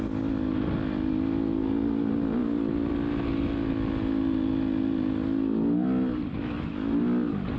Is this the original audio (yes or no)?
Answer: yes